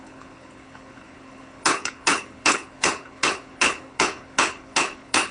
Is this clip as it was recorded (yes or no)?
no